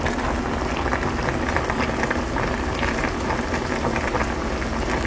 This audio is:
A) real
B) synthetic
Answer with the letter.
A